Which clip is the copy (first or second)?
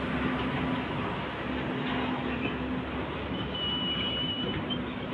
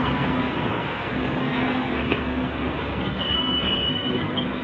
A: second